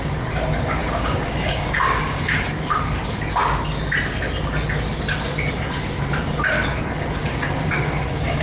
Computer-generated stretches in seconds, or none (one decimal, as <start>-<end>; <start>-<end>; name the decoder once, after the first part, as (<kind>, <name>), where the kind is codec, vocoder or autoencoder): 0.8-2.5 (codec, DAC); 7.2-8.4